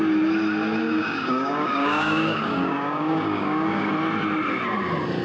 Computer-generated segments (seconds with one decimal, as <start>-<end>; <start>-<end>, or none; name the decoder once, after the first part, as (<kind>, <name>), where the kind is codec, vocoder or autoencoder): 0.8-3.9 (codec, DAC)